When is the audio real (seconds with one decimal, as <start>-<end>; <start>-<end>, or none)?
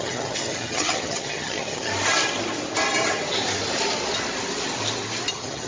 1.9-5.3